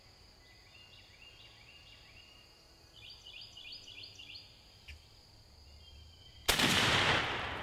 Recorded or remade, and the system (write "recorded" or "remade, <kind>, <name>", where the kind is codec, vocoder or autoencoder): recorded